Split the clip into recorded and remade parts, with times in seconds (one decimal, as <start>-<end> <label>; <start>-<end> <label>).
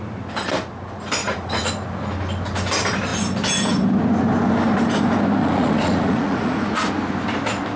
0.0-1.2 recorded; 1.2-1.7 remade; 1.7-5.4 recorded; 5.4-6.9 remade; 6.9-7.8 recorded